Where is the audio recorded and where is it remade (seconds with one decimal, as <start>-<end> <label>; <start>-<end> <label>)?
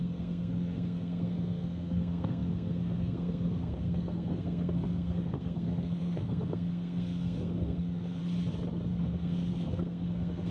0.0-8.2 remade; 8.2-8.9 recorded; 8.9-10.5 remade